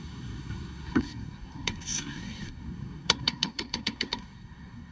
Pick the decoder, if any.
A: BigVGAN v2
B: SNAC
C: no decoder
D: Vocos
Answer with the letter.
B